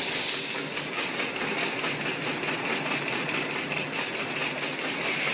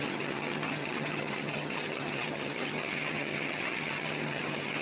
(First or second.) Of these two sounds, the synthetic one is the second